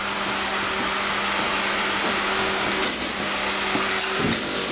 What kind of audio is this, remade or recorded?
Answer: recorded